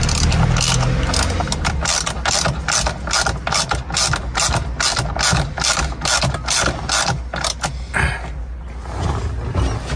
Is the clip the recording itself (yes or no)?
yes